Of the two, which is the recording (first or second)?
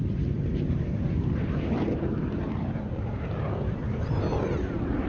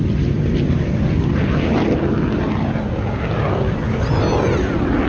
second